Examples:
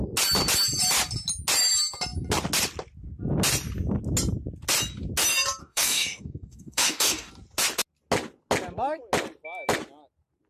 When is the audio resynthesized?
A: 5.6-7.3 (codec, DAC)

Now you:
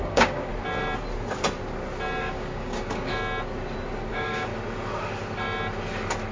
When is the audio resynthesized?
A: 0.0-0.5 (codec, DAC); 2.2-3.1; 4.1-4.5

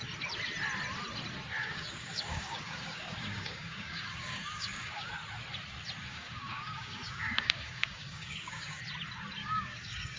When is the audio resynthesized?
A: 1.6-5.1 (codec, DAC); 6.1-8.8; 9.4-10.2